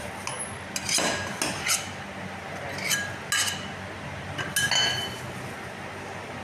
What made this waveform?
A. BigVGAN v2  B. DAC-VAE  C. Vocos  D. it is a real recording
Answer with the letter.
D